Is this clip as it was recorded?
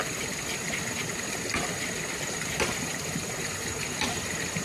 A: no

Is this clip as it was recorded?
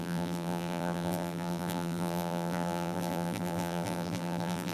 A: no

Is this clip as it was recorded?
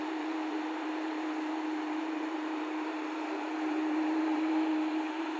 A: no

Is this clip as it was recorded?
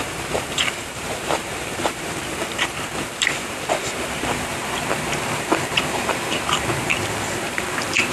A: no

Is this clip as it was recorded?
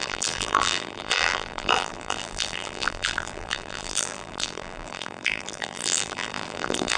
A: no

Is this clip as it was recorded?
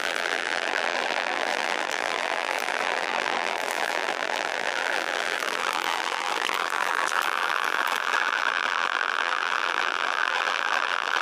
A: no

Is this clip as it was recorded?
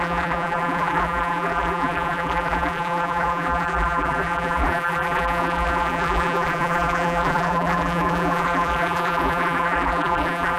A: no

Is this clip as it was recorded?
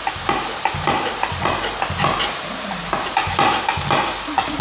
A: yes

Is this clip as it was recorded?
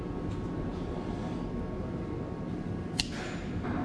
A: yes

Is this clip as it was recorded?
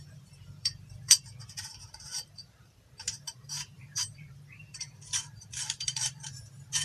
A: no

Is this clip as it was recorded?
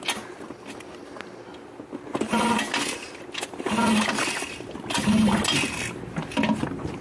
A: yes